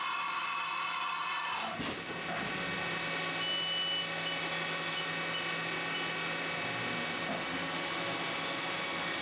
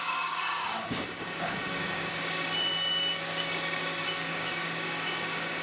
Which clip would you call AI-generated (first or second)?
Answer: second